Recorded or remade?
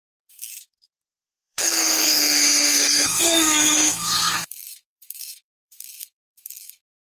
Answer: remade